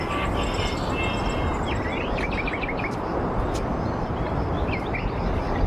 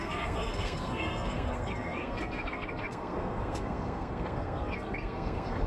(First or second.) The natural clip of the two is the first